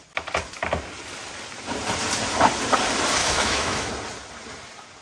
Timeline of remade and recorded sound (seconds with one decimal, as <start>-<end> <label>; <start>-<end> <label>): 0.0-3.2 recorded; 3.2-3.9 remade; 3.9-5.0 recorded

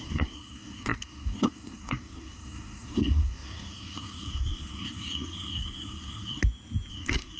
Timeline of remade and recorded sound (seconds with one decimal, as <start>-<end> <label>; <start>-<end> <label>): 0.0-6.4 remade; 6.4-6.9 recorded; 6.9-7.4 remade

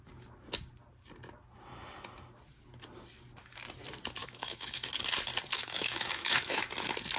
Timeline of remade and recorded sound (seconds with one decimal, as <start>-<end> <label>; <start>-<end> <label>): 0.0-4.2 recorded; 4.2-4.9 remade; 4.9-5.5 recorded; 5.5-6.6 remade; 6.6-7.2 recorded

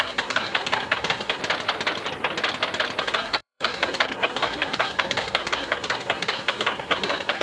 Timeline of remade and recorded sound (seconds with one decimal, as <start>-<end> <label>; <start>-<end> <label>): 0.0-1.4 remade; 1.4-3.0 recorded; 3.0-7.4 remade

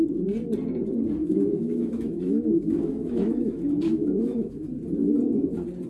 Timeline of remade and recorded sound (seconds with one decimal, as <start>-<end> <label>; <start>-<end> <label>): 0.0-1.2 recorded; 1.2-4.7 remade; 4.7-5.9 recorded

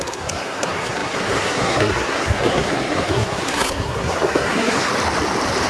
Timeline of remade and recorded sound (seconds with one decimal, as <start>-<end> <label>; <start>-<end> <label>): 0.0-4.9 remade; 4.9-5.7 recorded

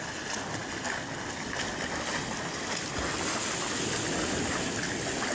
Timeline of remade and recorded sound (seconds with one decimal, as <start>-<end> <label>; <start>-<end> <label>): 0.0-5.3 recorded